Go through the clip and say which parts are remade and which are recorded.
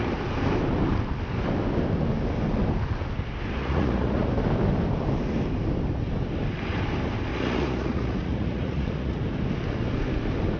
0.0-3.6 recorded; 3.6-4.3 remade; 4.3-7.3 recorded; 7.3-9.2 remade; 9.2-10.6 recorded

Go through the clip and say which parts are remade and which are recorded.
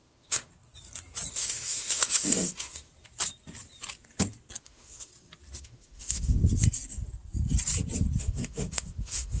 0.0-0.5 remade; 0.5-1.3 recorded; 1.3-2.9 remade; 2.9-4.6 recorded; 4.6-5.1 remade; 5.1-5.6 recorded; 5.6-6.4 remade; 6.4-8.2 recorded; 8.2-9.4 remade